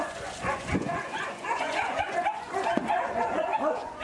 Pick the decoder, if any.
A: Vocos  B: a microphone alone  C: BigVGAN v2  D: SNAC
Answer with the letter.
A